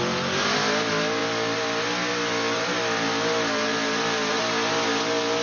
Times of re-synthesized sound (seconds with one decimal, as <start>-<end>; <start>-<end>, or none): none